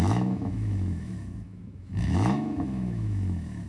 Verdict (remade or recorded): remade